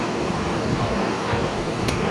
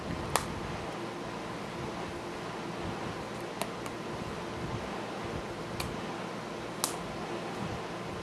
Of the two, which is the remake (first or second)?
first